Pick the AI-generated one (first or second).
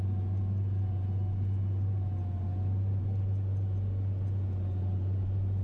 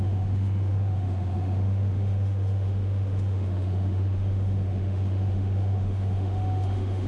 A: second